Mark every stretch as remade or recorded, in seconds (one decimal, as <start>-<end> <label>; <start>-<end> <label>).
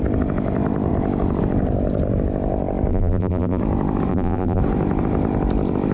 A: 0.0-2.9 recorded; 2.9-3.6 remade; 3.6-4.1 recorded; 4.1-4.6 remade; 4.6-5.9 recorded